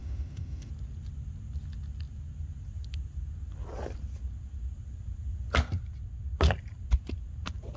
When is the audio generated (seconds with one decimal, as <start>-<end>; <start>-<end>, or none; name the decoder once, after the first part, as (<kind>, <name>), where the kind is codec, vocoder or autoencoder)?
0.0-0.7 (autoencoder, DAC-VAE)